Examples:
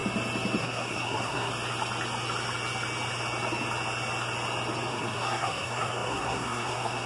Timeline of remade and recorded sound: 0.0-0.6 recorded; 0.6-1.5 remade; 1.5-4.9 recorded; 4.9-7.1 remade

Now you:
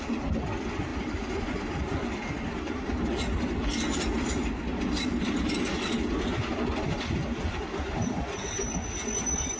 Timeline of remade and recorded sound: 0.0-9.6 recorded

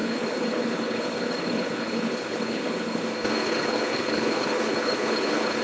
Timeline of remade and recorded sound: 0.0-3.0 remade; 3.0-3.4 recorded; 3.4-5.6 remade